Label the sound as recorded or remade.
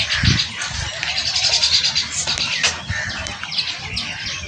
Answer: recorded